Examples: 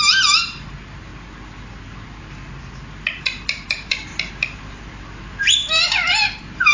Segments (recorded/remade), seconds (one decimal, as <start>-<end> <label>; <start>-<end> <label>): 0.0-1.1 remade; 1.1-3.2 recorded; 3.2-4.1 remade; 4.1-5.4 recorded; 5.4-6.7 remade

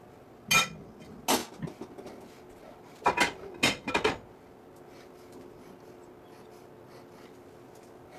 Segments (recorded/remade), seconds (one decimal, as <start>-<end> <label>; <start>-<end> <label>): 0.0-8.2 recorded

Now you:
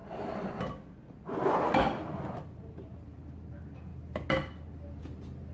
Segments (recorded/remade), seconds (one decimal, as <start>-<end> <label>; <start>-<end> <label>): 0.0-5.5 recorded